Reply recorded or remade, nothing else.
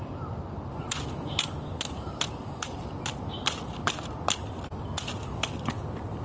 recorded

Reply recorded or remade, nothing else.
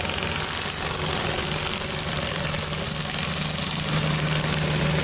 recorded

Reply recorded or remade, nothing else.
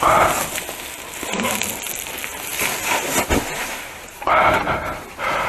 recorded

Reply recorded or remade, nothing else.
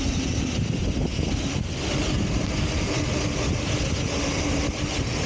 recorded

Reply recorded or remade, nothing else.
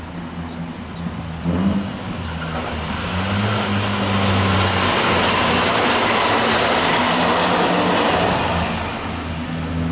recorded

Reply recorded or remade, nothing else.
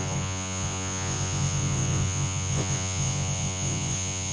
remade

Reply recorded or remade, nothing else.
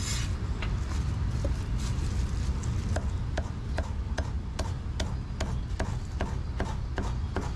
recorded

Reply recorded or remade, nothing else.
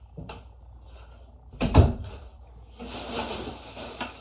recorded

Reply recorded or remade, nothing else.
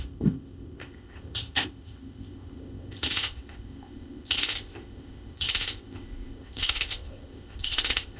remade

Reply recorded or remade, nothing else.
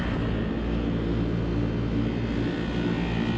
recorded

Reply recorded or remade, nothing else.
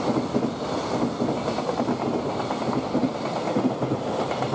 recorded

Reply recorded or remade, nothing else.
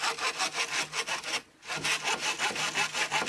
recorded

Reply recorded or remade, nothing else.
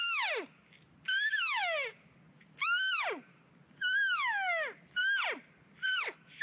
recorded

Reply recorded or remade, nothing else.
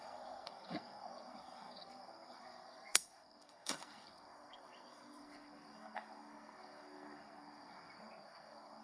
remade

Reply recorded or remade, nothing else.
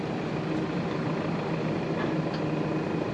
recorded